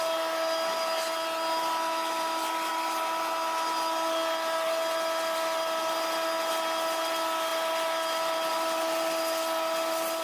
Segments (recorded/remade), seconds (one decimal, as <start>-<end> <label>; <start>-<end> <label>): 0.0-10.2 recorded